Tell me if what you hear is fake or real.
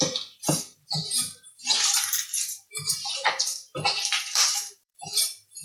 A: fake